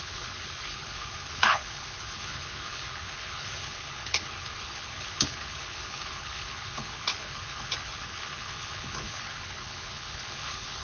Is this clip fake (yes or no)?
yes